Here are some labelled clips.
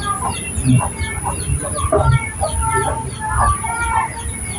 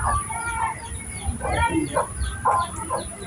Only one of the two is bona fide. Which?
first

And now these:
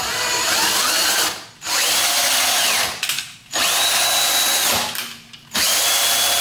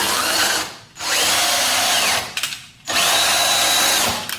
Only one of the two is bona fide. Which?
first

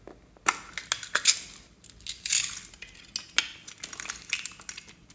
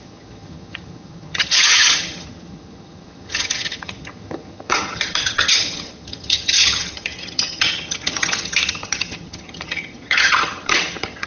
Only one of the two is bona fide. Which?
first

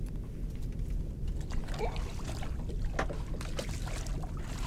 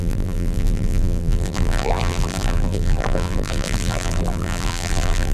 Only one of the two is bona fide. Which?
first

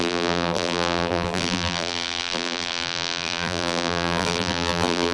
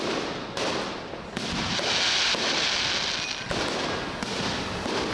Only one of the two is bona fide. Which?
second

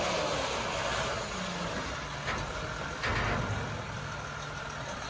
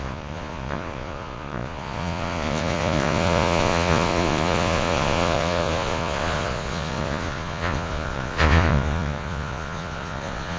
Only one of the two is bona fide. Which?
first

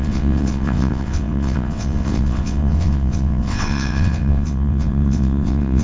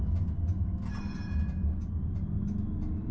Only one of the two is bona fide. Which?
second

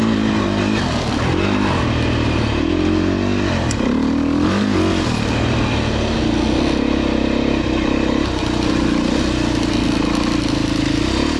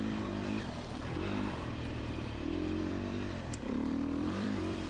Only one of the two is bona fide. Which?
first